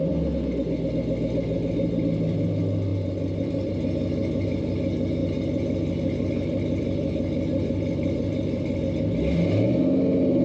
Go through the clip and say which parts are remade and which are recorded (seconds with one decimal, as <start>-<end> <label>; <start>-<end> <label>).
0.0-2.9 recorded; 2.9-3.7 remade; 3.7-4.2 recorded; 4.2-4.7 remade; 4.7-5.2 recorded; 5.2-8.8 remade; 8.8-10.4 recorded